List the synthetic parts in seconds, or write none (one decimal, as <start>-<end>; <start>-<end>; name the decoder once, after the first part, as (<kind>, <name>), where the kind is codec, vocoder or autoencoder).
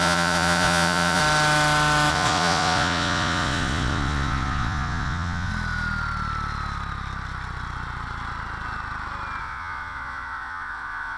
0.0-1.2 (vocoder, Vocos); 2.1-5.5; 9.4-11.2